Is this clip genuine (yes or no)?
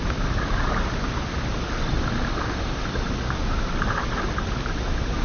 yes